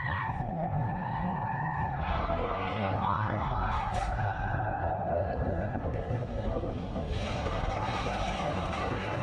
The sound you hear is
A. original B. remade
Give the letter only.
B